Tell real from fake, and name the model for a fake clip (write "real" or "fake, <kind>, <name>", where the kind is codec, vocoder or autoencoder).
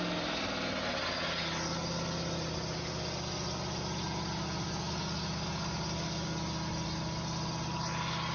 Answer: real